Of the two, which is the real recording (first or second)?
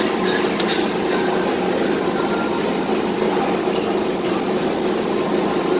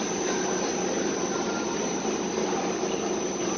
first